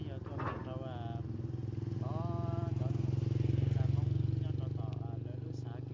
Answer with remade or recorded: recorded